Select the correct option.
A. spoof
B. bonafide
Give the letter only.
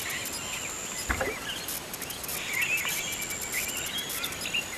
B